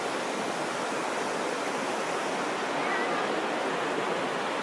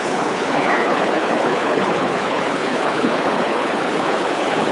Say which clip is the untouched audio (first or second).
first